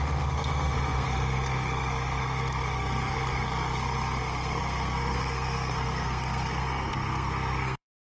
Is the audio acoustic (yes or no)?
no